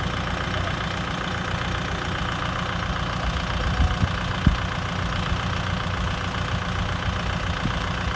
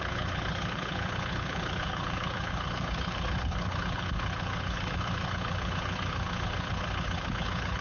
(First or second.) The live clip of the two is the first